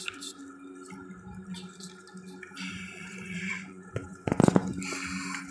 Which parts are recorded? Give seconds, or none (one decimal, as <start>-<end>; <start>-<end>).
0.4-2.7; 4.7-5.5

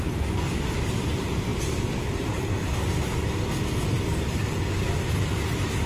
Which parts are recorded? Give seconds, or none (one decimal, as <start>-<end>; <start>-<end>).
0.0-5.9

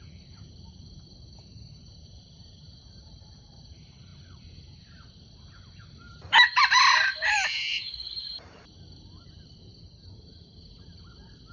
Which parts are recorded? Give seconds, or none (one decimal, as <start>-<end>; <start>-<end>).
none